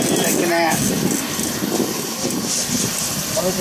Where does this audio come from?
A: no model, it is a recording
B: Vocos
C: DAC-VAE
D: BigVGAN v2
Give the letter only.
A